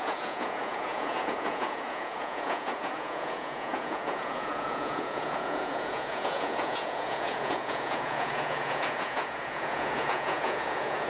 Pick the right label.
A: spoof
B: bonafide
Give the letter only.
A